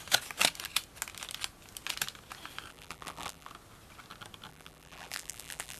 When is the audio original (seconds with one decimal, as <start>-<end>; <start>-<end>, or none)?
0.0-2.7; 3.5-4.5